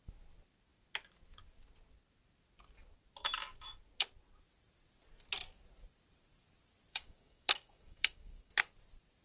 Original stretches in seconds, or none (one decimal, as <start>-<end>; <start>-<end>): 0.0-6.9; 8.5-9.2